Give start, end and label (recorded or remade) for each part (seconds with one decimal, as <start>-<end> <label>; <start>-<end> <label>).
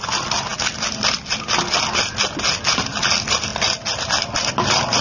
0.0-5.0 recorded